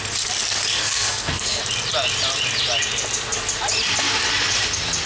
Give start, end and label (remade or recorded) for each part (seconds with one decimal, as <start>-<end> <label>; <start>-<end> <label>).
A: 0.0-0.7 recorded; 0.7-1.6 remade; 1.6-5.1 recorded